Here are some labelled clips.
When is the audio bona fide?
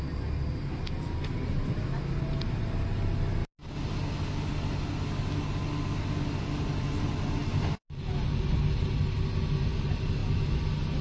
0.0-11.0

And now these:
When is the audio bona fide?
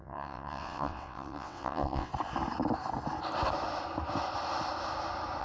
2.1-5.4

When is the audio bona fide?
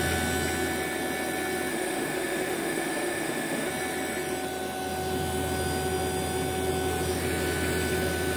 0.0-1.7; 3.7-8.4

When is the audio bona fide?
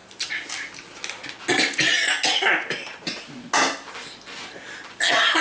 0.0-5.4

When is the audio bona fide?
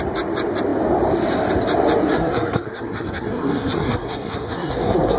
0.0-2.1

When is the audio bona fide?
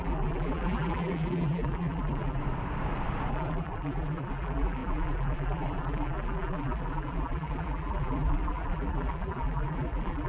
2.4-3.3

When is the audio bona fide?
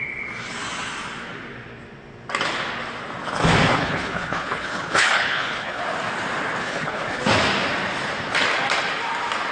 0.0-3.7; 5.8-6.6; 7.2-9.5